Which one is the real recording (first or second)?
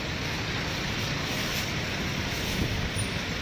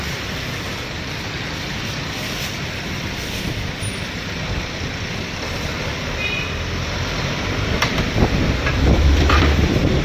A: first